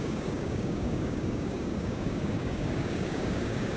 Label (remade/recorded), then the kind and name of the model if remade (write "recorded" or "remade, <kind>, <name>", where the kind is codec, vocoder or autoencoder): remade, codec, DAC